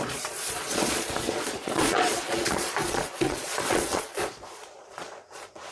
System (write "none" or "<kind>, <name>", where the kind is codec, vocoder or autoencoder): vocoder, Vocos